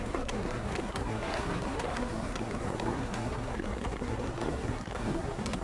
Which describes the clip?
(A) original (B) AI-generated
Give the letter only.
B